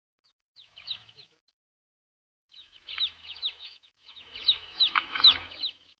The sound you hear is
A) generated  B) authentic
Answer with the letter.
A